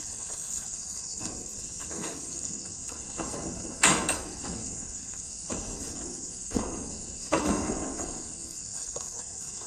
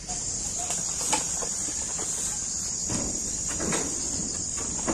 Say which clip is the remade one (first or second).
first